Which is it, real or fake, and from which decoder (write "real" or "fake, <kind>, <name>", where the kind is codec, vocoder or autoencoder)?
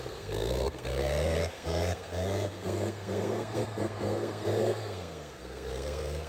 fake, codec, SNAC